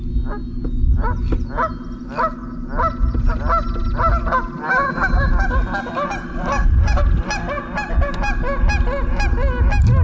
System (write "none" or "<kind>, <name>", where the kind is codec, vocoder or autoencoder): none